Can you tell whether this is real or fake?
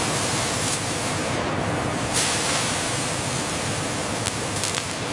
real